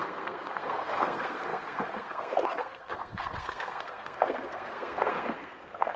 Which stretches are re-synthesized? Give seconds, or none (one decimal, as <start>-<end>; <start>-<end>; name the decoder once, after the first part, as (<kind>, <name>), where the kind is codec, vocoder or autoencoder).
0.0-6.0 (codec, SNAC)